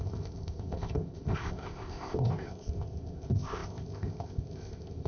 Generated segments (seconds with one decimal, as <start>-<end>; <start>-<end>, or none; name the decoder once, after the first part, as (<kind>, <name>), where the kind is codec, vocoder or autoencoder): 0.0-5.1 (codec, ZipCodec)